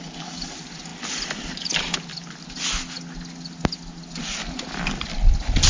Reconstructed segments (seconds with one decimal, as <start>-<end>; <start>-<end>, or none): none